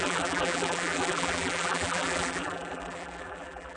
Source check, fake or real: fake